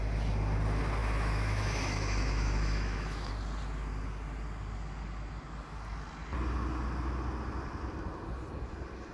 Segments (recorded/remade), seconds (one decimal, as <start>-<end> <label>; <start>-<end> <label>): 0.0-1.0 recorded; 1.0-3.3 remade; 3.3-9.1 recorded